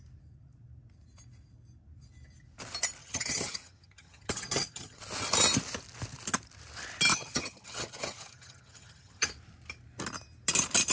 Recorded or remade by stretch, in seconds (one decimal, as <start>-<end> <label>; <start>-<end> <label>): 0.0-3.0 recorded; 3.0-5.0 remade; 5.0-7.1 recorded; 7.1-9.3 remade; 9.3-10.9 recorded